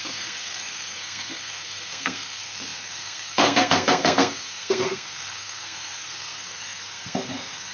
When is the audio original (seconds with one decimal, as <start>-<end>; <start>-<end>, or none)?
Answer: none